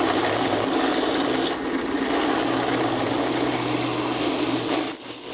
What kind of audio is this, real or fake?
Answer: real